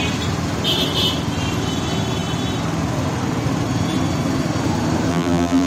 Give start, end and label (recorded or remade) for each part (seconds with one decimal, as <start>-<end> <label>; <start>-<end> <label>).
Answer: 0.0-5.1 recorded; 5.1-5.7 remade